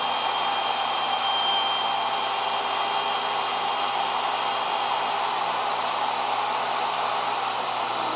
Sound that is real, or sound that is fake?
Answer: real